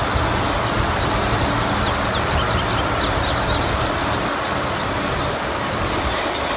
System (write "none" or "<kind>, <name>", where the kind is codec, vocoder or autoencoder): none